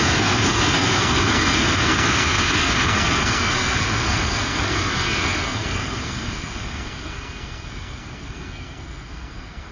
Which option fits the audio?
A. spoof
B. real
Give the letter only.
A